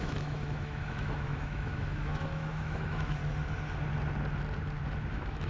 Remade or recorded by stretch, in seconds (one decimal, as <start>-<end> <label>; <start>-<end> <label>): 0.0-3.2 remade; 3.2-5.1 recorded; 5.1-5.5 remade